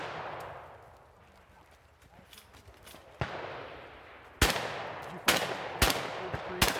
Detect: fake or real real